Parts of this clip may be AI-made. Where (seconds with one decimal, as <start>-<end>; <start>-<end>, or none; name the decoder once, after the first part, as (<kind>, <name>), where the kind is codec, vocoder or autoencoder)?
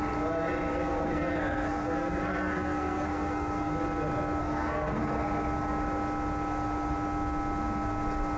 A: 0.7-3.7 (codec, SNAC); 4.4-5.1